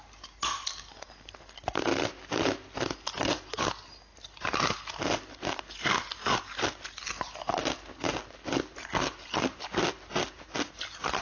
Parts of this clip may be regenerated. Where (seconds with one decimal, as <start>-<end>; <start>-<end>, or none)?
none